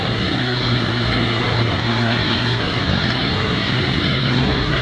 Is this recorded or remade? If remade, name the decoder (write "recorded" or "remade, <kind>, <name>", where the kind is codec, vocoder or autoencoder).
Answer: remade, codec, SNAC